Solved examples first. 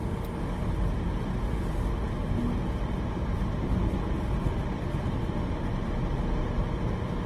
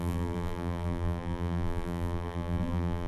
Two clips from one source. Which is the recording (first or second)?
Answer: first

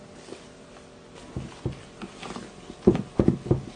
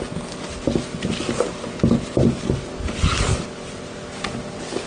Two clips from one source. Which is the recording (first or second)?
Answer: second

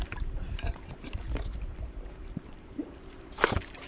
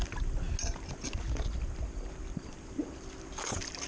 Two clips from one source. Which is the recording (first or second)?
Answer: second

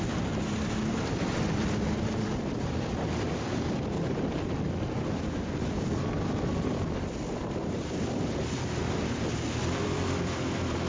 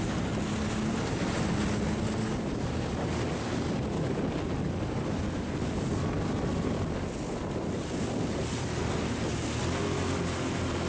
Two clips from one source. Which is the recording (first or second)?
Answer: second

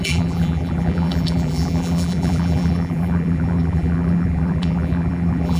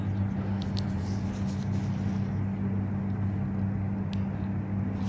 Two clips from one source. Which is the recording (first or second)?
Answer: second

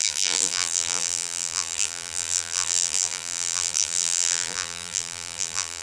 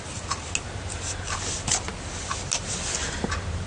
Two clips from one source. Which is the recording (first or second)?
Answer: second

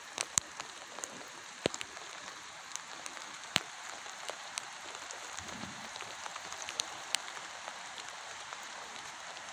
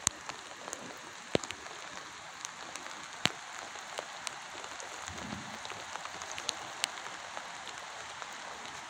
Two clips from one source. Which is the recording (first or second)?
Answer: second